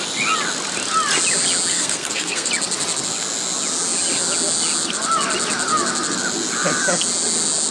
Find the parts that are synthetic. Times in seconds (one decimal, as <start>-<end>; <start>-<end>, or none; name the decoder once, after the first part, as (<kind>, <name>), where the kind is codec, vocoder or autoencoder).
1.7-2.5 (codec, SNAC)